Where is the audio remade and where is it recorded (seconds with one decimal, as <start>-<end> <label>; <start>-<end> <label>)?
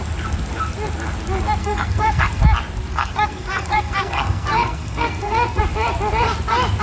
0.0-1.6 recorded; 1.6-2.4 remade; 2.4-2.9 recorded; 2.9-5.6 remade; 5.6-6.8 recorded